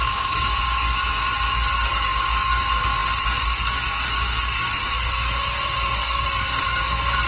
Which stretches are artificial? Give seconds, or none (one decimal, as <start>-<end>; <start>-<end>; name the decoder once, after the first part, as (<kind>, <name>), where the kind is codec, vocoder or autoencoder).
0.0-7.3 (codec, DAC)